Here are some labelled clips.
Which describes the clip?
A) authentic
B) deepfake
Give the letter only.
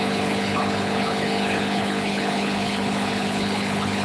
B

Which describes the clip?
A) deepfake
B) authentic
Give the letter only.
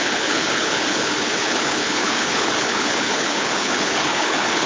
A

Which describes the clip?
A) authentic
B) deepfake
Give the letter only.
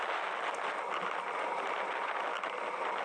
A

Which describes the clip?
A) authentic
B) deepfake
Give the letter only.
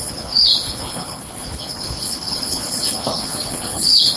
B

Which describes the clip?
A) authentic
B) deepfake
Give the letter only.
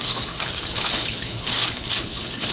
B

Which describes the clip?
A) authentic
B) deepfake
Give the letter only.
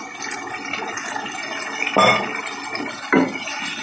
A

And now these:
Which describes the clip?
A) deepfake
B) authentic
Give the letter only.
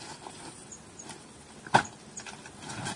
B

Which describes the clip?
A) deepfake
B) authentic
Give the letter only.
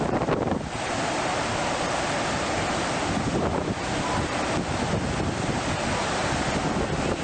B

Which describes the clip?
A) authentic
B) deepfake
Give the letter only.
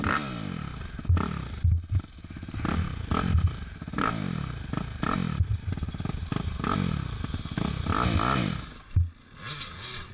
A